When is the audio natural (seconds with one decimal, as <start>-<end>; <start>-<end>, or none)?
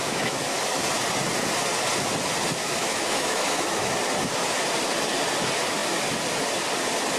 0.6-2.6; 3.9-7.2